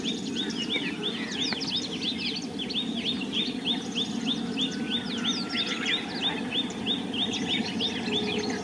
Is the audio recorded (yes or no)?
yes